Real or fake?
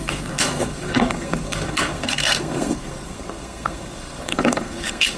fake